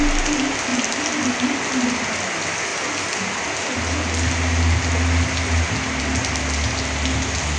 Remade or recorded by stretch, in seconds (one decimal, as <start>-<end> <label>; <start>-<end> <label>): 0.0-7.6 recorded